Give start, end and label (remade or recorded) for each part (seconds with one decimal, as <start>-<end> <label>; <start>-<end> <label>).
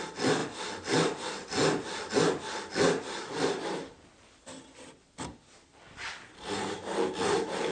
0.0-7.7 recorded